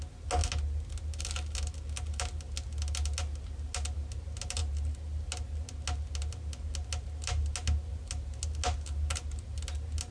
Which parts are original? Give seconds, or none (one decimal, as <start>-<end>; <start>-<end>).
0.0-10.1